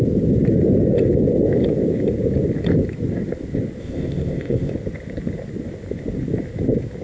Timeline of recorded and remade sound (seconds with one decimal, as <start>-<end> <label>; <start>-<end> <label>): 0.0-3.8 recorded; 3.8-4.7 remade; 4.7-7.0 recorded